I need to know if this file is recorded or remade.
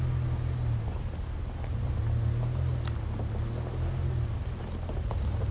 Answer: recorded